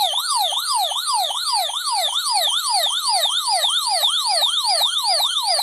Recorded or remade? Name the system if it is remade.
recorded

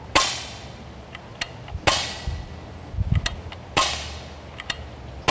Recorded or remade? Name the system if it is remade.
recorded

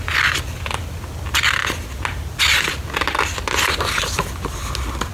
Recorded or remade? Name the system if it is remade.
recorded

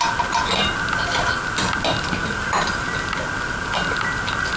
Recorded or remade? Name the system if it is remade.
recorded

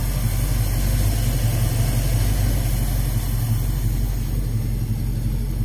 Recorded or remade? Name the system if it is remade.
recorded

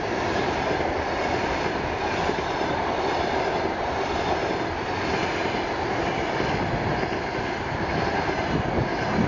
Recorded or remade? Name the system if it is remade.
remade, vocoder, BigVGAN v2